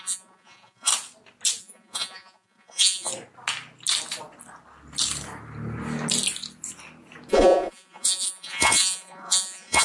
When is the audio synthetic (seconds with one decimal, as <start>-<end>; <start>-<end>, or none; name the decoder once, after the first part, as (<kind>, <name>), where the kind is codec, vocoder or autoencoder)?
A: 0.0-0.9 (vocoder, Vocos); 1.6-3.1; 7.3-9.8